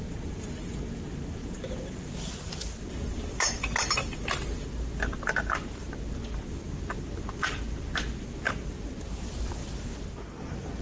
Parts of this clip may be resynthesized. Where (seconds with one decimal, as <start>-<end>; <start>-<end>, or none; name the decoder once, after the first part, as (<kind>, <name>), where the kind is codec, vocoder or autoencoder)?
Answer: 1.4-2.6 (vocoder, BigVGAN v2)